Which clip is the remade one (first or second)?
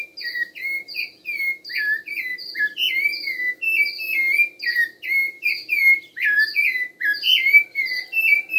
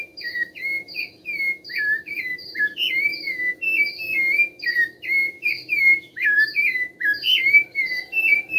second